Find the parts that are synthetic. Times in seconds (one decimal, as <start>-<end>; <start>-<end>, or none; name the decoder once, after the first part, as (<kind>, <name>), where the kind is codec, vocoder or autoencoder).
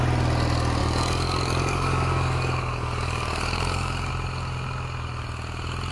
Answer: 0.8-4.1 (codec, DAC)